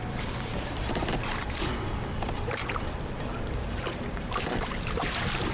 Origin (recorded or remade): remade